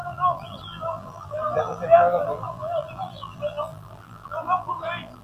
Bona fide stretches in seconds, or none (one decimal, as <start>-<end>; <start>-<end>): none